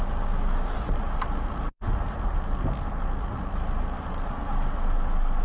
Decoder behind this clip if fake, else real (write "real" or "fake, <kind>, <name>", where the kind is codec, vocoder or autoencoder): real